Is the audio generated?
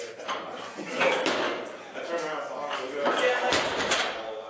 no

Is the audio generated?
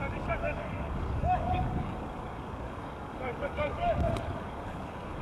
yes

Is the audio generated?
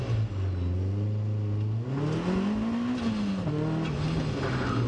no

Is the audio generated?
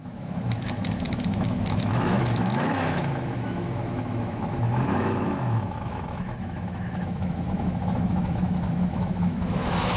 yes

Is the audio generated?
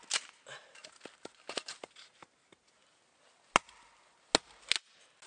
no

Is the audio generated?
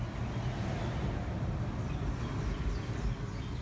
no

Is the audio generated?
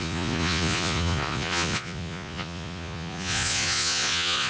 yes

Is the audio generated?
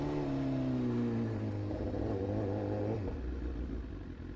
no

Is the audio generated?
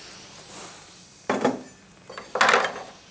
no